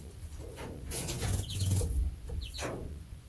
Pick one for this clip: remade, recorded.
remade